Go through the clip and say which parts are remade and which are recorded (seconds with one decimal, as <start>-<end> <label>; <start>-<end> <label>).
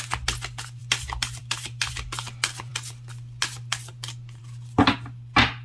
0.0-5.6 recorded